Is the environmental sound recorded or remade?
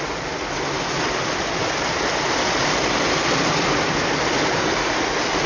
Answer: recorded